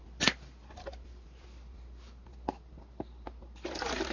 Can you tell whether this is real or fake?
real